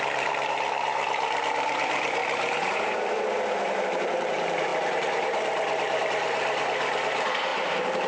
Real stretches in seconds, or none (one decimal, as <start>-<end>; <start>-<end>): none